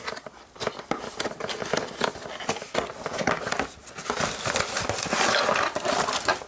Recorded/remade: recorded